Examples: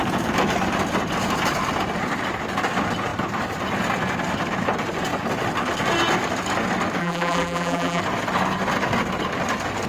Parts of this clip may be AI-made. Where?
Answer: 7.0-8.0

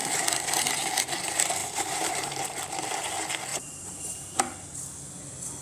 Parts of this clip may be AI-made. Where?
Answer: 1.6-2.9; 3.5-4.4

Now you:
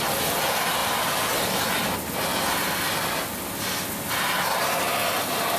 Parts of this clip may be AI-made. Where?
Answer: none

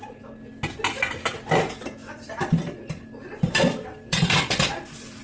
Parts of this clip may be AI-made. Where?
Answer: 2.0-5.2